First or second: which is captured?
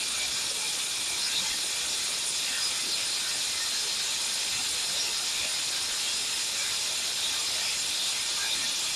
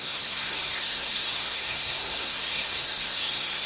first